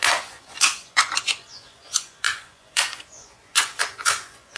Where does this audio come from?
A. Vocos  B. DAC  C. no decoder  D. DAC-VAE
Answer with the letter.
A